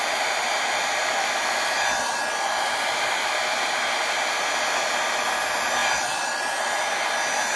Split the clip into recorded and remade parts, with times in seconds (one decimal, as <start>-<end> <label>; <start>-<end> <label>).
0.0-7.6 recorded

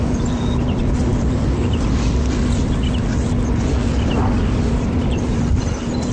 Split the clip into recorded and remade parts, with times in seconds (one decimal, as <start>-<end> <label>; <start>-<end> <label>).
0.0-6.1 recorded

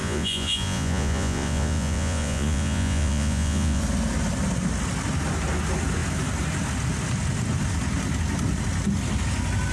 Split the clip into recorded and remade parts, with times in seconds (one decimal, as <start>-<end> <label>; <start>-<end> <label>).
0.0-3.8 remade; 3.8-9.7 recorded

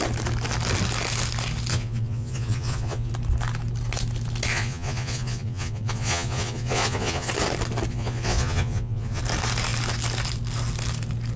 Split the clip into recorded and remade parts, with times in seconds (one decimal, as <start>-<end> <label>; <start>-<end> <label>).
0.0-1.7 recorded; 1.7-3.1 remade; 3.1-4.5 recorded; 4.5-7.3 remade; 7.3-7.9 recorded; 7.9-9.2 remade; 9.2-11.4 recorded

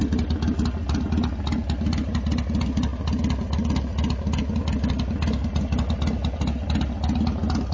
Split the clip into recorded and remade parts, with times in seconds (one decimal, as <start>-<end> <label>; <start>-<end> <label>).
0.0-7.7 recorded

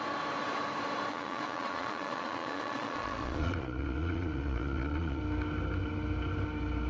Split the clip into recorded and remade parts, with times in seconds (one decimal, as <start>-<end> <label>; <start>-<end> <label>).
0.0-1.1 recorded; 1.1-5.2 remade; 5.2-6.9 recorded

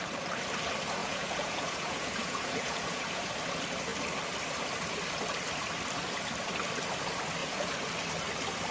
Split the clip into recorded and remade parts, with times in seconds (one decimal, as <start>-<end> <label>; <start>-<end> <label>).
0.0-1.0 recorded; 1.0-3.3 remade; 3.3-7.4 recorded; 7.4-7.9 remade; 7.9-8.7 recorded